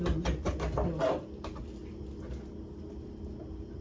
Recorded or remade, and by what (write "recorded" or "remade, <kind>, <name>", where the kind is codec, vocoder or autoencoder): recorded